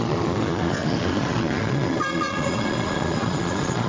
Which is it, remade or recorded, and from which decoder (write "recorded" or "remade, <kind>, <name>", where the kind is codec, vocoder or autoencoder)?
remade, vocoder, Vocos